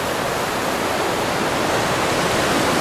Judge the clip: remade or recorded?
recorded